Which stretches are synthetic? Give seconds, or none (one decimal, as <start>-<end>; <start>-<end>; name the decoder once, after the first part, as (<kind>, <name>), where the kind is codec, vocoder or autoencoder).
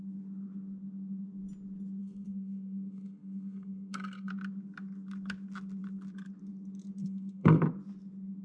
2.0-4.3 (codec, SNAC); 7.0-7.6